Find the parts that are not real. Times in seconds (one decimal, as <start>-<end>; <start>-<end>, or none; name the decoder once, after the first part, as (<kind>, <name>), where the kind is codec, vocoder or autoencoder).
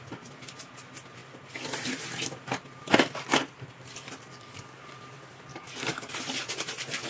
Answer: 4.3-5.0 (codec, DAC); 5.5-6.1